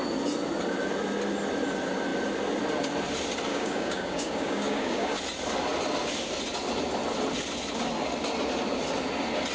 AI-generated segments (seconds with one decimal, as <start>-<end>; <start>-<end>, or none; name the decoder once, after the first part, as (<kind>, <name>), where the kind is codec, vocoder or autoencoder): 3.5-5.2 (codec, DAC)

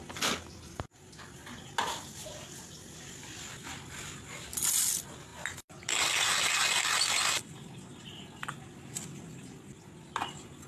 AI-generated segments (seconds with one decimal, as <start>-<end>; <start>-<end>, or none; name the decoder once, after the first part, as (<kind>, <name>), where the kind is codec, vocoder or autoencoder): none